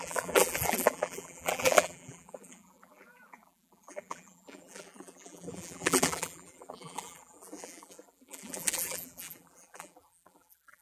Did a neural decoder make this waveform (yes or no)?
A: yes